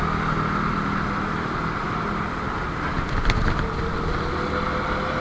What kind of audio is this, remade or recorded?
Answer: recorded